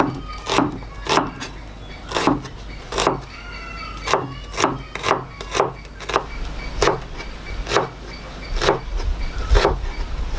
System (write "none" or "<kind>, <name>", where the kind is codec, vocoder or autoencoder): none